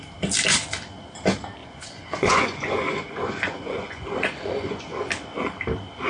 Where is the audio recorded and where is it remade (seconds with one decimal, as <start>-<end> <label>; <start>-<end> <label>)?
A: 0.0-1.6 recorded; 1.6-5.1 remade; 5.1-6.1 recorded